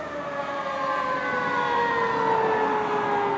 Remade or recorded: recorded